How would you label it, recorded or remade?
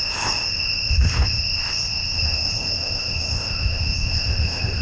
remade